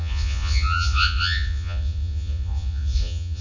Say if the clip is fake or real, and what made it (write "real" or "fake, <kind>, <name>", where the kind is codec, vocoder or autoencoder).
fake, vocoder, Vocos